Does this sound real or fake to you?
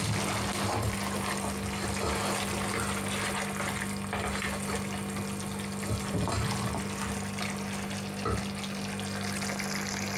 real